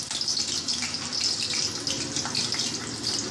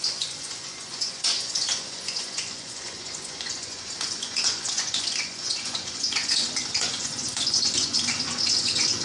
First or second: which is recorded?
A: first